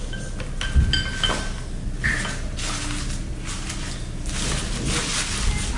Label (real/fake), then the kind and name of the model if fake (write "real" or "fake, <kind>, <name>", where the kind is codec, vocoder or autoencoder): real